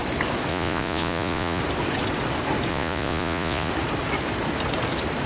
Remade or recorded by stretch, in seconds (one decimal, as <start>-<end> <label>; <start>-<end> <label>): 0.0-0.5 recorded; 0.5-1.6 remade; 1.6-2.7 recorded; 2.7-3.7 remade; 3.7-5.3 recorded